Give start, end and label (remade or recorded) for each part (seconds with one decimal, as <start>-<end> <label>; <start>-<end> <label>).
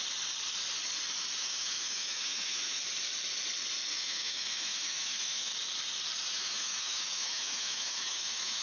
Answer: 0.0-1.4 recorded; 1.4-2.8 remade; 2.8-3.9 recorded; 3.9-5.5 remade; 5.5-6.3 recorded; 6.3-8.6 remade